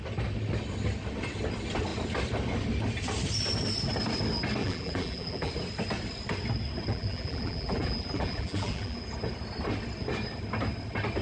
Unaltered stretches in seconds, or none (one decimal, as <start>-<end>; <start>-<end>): 0.0-4.6; 5.5-6.9; 9.0-11.2